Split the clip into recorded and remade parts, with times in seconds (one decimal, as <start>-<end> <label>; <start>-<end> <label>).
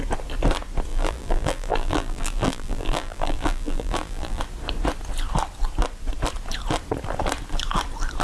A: 0.0-0.9 recorded; 0.9-4.4 remade; 4.4-8.2 recorded